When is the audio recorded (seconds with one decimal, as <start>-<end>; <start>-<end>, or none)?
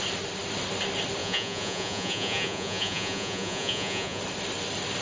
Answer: 0.0-1.2; 4.2-5.0